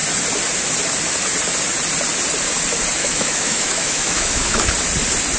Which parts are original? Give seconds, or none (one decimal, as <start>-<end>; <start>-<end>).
0.0-3.0; 4.7-5.4